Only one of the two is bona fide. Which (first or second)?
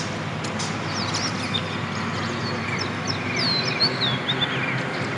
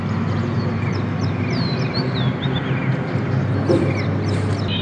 first